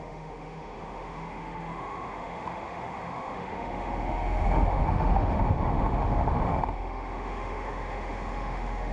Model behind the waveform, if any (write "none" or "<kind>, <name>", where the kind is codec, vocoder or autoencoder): autoencoder, DAC-VAE